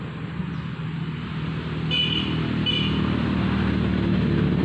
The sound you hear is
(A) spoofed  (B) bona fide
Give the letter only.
B